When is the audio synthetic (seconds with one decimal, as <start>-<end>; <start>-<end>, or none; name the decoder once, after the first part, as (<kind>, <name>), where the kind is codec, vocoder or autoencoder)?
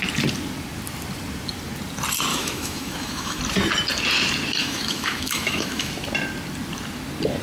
2.3-3.4 (autoencoder, DAC-VAE); 4.6-5.9